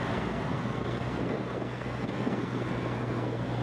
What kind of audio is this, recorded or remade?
remade